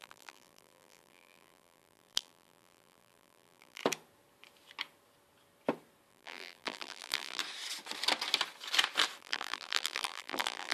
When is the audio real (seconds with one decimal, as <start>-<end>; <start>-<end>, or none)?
3.8-6.1; 7.4-9.2

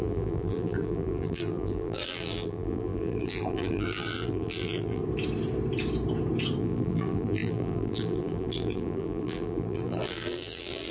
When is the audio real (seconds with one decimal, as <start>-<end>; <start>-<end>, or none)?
5.0-6.6

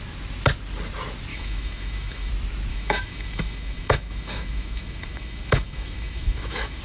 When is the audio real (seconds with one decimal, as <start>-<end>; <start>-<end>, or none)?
0.0-1.3; 2.3-2.7

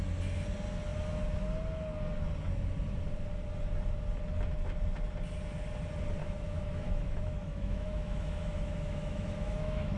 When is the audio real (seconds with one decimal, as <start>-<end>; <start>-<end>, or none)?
0.0-6.2

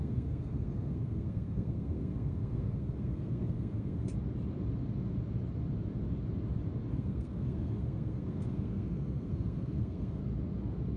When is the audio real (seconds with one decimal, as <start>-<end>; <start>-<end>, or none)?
4.1-6.9; 10.2-11.0

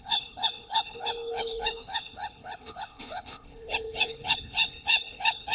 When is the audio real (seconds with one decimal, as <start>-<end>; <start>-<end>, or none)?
none

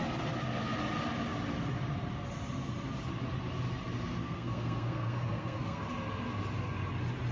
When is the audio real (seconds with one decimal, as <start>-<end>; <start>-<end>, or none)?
0.0-4.2; 5.8-7.3

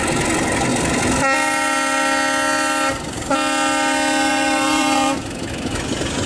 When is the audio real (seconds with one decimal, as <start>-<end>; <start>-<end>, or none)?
0.7-4.3